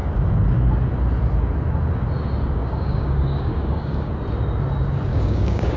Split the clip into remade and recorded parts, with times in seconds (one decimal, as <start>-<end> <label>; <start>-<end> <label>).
0.0-2.6 recorded; 2.6-4.1 remade; 4.1-5.1 recorded; 5.1-5.8 remade